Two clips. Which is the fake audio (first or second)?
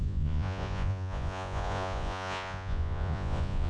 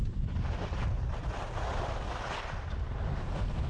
first